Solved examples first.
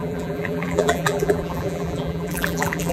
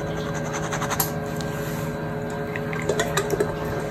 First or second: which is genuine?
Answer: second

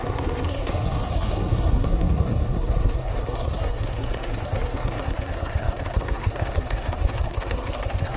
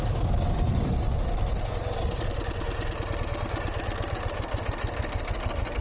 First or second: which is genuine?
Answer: second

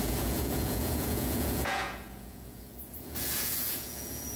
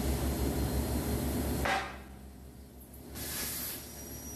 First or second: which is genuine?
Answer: second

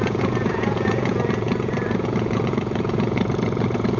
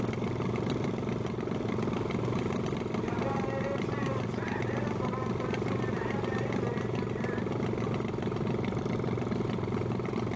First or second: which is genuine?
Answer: second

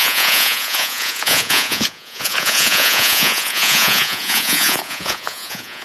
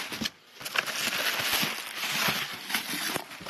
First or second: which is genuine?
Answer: second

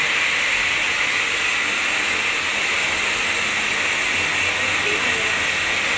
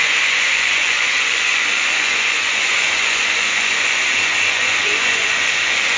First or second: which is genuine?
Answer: first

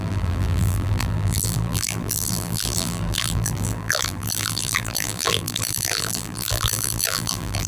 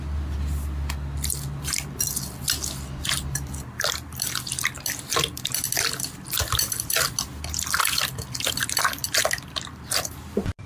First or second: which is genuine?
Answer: second